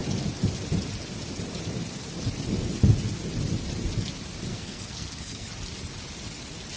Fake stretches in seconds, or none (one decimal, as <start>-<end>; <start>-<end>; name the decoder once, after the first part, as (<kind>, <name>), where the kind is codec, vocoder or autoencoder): 4.5-5.5 (codec, SNAC)